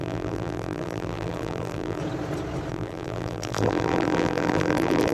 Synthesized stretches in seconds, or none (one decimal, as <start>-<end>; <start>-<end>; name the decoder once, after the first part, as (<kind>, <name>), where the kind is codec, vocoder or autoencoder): 0.0-2.0 (vocoder, BigVGAN v2); 2.7-5.1